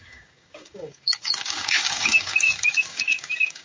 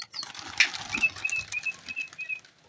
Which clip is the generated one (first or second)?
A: first